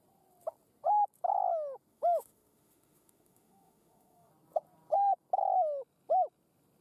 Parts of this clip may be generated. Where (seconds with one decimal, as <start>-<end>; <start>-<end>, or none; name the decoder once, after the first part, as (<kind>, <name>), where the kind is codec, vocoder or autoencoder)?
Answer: 1.9-4.3 (autoencoder, DAC-VAE)